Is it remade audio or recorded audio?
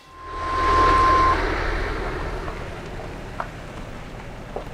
recorded